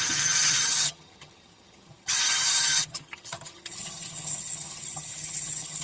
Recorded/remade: remade